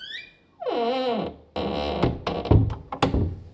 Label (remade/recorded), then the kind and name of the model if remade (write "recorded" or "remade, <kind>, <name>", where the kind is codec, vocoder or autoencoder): recorded